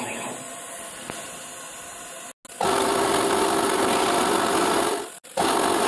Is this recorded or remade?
recorded